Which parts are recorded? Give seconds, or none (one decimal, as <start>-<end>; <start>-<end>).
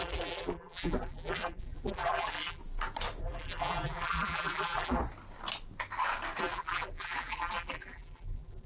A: 2.6-3.2; 5.0-6.4